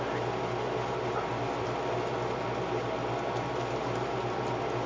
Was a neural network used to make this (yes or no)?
no